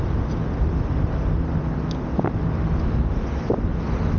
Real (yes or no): yes